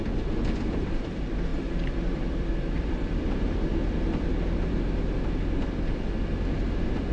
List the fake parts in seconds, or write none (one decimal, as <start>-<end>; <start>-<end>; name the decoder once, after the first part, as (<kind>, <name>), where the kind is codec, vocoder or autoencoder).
1.5-4.8 (vocoder, BigVGAN v2)

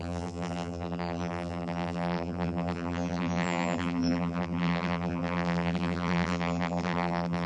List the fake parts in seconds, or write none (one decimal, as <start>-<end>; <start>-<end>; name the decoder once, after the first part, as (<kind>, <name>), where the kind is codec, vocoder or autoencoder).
0.0-7.5 (vocoder, BigVGAN v2)

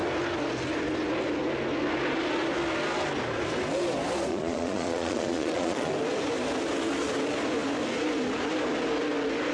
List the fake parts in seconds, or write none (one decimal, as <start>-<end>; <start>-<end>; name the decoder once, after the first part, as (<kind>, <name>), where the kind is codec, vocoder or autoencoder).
4.3-5.9 (vocoder, Vocos)

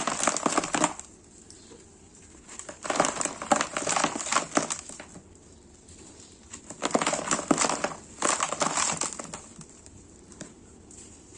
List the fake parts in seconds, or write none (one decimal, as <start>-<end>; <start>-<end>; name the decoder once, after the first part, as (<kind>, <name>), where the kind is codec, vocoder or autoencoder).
none

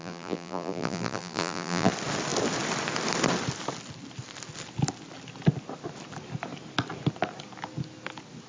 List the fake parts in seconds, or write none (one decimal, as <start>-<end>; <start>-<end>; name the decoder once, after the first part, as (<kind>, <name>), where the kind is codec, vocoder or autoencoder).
0.0-1.9 (vocoder, BigVGAN v2)

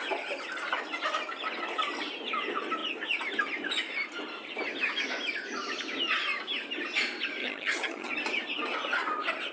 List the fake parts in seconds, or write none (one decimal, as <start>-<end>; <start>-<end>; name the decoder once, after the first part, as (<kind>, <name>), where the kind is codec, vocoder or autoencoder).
7.4-8.1 (vocoder, HiFi-GAN)